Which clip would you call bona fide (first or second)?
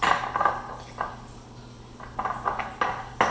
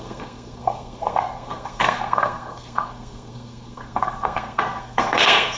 first